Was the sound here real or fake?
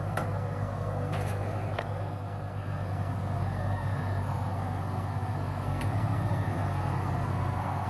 fake